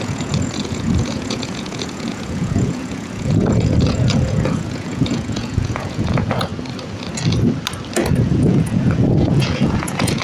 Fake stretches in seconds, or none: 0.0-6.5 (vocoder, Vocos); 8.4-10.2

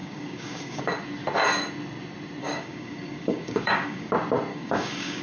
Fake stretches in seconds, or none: 0.0-0.8 (codec, DAC); 2.4-4.1; 4.5-5.2

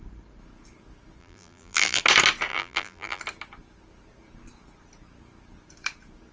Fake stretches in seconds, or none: 1.2-2.0 (vocoder, BigVGAN v2); 2.5-3.2